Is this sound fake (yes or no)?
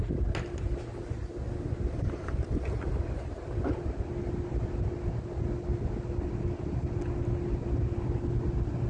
no